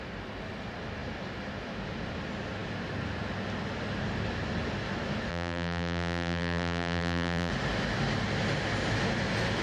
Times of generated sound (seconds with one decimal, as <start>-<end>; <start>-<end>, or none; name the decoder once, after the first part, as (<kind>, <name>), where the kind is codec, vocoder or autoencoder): 5.3-7.5 (vocoder, BigVGAN v2)